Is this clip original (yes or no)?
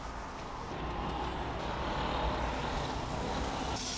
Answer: yes